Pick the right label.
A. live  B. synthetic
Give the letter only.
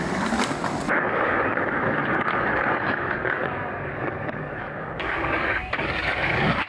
B